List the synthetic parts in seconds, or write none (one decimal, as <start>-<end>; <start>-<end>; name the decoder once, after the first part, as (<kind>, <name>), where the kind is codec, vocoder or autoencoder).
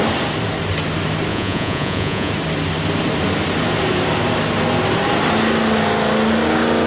1.3-2.3 (vocoder, Vocos)